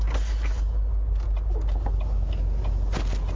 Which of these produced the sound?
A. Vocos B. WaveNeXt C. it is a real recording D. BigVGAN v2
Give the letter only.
C